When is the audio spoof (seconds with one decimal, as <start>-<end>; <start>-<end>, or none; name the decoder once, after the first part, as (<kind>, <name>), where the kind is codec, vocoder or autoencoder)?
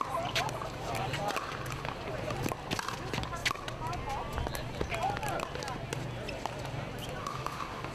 7.2-7.9 (autoencoder, DAC-VAE)